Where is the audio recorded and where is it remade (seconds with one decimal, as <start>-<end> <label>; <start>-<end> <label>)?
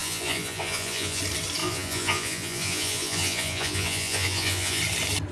0.0-1.2 remade; 1.2-1.6 recorded; 1.6-4.8 remade; 4.8-5.3 recorded